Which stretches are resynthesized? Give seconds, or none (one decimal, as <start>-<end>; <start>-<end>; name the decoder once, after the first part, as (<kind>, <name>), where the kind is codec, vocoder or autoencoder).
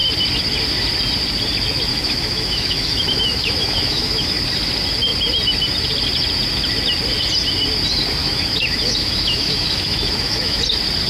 1.9-4.4 (autoencoder, DAC-VAE); 8.2-10.6